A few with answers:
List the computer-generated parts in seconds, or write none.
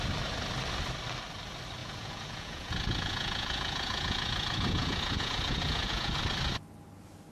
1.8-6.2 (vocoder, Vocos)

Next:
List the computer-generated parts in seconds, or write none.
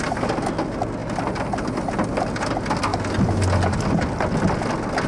none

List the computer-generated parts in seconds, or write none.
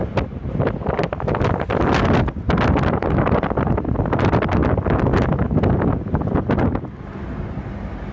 none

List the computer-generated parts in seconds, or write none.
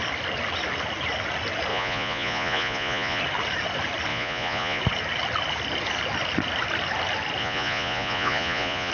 1.7-3.2 (vocoder, Vocos); 4.1-4.8; 7.4-8.9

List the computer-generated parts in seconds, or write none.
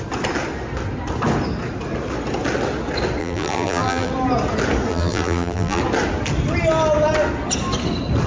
3.2-4.1 (vocoder, BigVGAN v2); 4.9-5.8